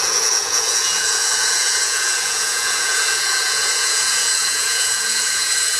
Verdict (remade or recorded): remade